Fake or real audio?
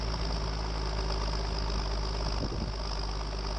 real